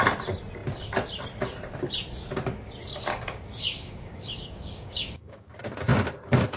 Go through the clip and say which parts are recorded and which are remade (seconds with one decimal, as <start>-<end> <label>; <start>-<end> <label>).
0.0-3.1 recorded; 3.1-5.5 remade; 5.5-6.6 recorded